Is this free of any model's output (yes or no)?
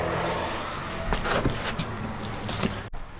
yes